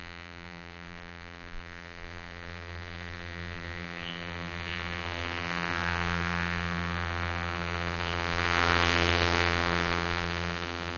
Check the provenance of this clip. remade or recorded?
remade